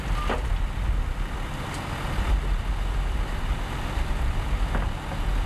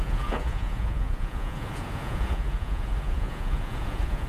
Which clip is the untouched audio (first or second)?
first